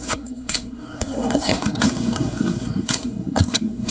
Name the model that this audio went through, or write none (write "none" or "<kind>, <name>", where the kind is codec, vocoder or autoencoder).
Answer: codec, SNAC